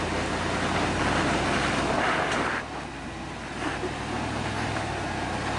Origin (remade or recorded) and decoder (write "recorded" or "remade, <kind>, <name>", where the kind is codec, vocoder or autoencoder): recorded